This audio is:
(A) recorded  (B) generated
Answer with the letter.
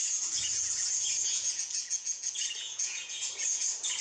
B